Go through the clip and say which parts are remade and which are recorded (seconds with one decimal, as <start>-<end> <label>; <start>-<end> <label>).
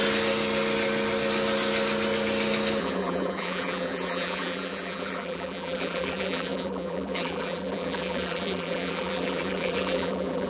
0.0-2.8 recorded; 2.8-10.5 remade